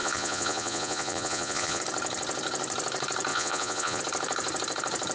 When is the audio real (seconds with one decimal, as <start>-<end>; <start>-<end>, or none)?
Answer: 1.8-3.3; 4.0-5.1